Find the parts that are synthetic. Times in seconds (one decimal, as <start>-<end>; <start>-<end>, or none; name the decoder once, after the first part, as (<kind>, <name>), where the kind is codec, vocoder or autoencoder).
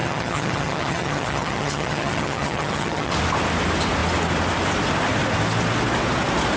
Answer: 0.0-3.1 (vocoder, HiFi-GAN)